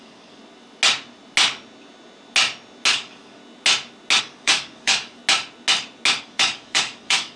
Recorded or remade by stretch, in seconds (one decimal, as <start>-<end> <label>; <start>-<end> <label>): 0.0-0.4 remade; 0.4-2.9 recorded; 2.9-3.4 remade; 3.4-4.2 recorded; 4.2-5.2 remade; 5.2-6.2 recorded; 6.2-7.4 remade